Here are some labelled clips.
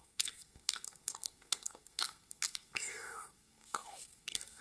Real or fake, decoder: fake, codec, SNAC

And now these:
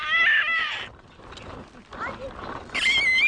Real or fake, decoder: real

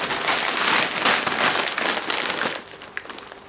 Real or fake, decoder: real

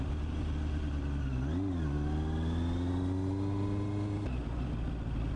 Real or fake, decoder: real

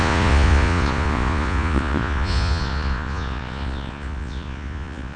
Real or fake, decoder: fake, vocoder, Vocos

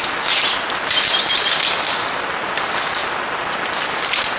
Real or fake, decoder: real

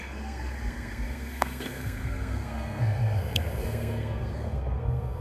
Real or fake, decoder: fake, codec, SNAC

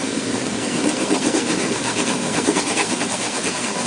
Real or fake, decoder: fake, codec, SNAC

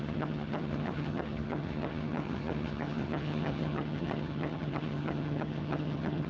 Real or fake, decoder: fake, vocoder, HiFi-GAN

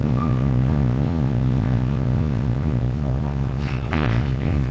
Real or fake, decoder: fake, vocoder, Vocos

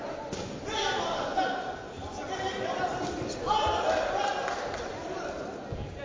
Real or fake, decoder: real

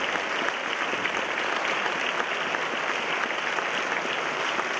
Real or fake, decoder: real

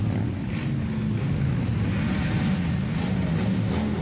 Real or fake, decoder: real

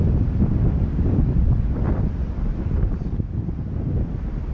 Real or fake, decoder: fake, vocoder, BigVGAN v2